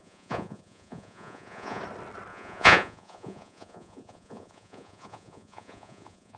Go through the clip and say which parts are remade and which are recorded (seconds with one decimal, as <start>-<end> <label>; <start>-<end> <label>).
0.0-1.8 remade; 1.8-2.3 recorded; 2.3-6.4 remade